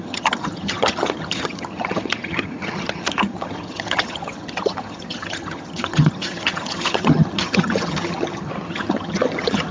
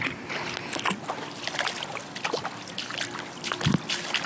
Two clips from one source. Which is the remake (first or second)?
first